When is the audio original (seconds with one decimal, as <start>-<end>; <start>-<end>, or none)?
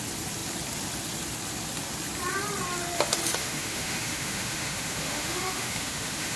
0.0-3.4